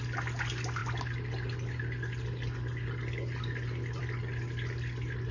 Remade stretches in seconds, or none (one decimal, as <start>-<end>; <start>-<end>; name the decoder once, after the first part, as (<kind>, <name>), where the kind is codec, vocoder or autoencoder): none

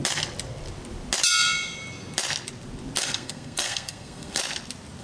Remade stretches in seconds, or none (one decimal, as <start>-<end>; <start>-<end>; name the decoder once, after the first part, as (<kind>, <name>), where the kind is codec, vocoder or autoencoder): 3.0-4.4 (codec, SNAC)

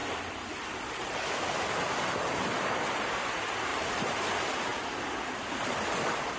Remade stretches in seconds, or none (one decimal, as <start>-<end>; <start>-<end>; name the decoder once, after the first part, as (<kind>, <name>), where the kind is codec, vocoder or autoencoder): 0.0-1.3 (vocoder, BigVGAN v2); 3.7-4.3

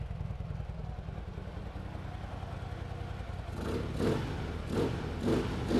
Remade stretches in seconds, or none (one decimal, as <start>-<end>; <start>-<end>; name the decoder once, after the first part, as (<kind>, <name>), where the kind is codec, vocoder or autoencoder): none

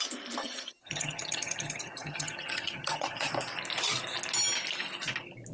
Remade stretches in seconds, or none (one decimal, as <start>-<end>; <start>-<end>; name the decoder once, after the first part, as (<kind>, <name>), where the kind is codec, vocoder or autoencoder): 0.4-3.3 (vocoder, HiFi-GAN)

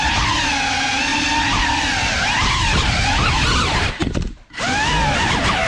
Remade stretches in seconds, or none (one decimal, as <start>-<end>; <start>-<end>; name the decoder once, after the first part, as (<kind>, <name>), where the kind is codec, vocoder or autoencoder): 1.1-4.5 (vocoder, BigVGAN v2)

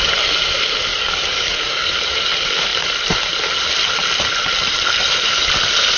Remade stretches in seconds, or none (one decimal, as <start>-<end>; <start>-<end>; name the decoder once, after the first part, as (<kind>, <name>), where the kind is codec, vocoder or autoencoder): 0.9-1.9 (codec, DAC)